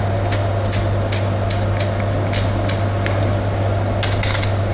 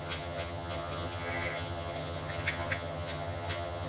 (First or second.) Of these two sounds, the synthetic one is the second